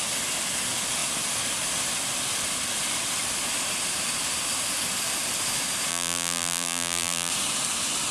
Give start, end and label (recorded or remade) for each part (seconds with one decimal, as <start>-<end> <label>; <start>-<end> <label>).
0.0-5.9 recorded; 5.9-7.3 remade; 7.3-8.1 recorded

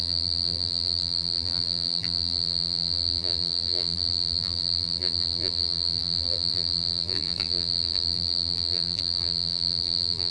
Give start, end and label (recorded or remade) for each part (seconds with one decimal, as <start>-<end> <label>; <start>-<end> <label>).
0.0-10.3 remade